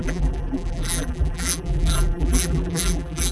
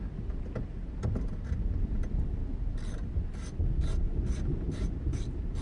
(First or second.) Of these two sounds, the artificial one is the first